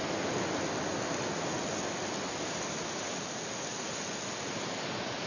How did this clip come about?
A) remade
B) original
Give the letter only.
B